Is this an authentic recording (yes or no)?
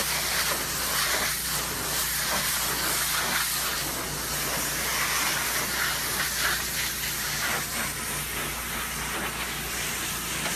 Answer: yes